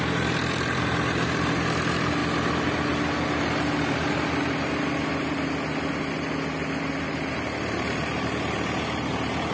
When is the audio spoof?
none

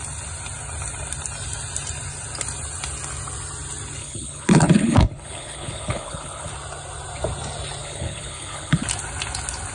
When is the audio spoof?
4.0-6.5 (codec, HILCodec); 7.8-8.8

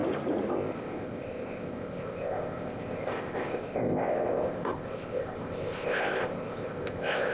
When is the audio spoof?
0.5-7.3 (codec, ZipCodec)